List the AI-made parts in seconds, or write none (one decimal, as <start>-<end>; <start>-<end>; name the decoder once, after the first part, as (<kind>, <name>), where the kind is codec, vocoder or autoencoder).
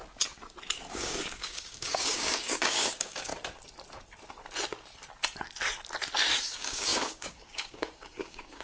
0.9-3.3 (codec, DAC); 6.4-8.6